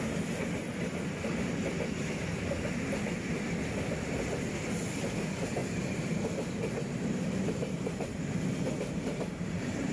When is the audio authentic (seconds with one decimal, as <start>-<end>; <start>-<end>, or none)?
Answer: 0.0-5.6